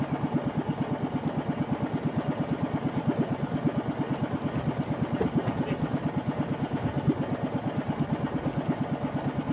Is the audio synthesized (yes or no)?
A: no